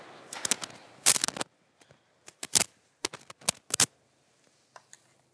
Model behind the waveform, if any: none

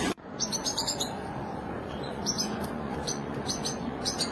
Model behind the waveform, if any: vocoder, Vocos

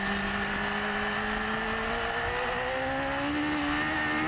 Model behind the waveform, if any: none